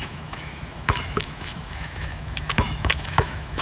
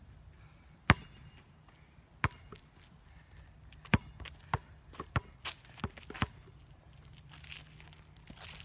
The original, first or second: second